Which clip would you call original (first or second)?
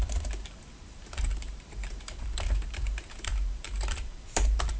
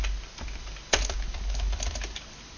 second